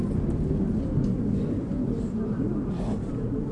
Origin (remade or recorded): recorded